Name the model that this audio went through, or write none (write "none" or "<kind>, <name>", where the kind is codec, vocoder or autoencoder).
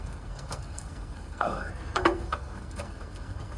codec, SNAC